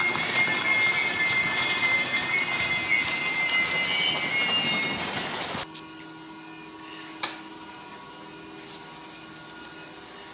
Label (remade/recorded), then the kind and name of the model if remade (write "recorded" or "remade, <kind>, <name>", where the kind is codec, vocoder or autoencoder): recorded